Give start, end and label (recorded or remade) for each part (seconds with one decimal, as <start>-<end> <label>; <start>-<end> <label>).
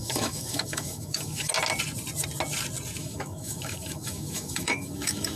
0.0-1.5 remade; 1.5-3.0 recorded; 3.0-5.4 remade